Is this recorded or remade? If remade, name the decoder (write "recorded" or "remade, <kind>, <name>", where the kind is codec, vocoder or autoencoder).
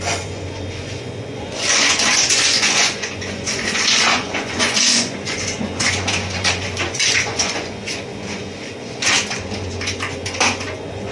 remade, vocoder, Vocos